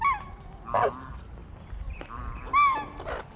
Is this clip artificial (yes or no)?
no